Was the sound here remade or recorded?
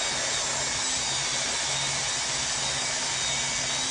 recorded